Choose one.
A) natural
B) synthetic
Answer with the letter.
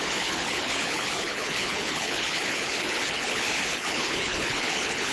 B